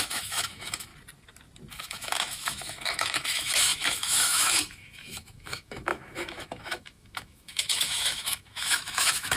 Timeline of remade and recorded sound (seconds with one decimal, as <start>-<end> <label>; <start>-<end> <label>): 0.0-0.9 remade; 0.9-1.7 recorded; 1.7-9.4 remade